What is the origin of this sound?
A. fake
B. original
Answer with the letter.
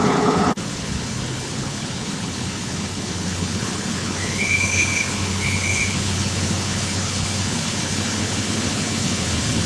A